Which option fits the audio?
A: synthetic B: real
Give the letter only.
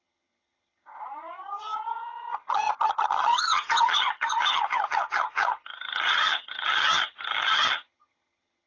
A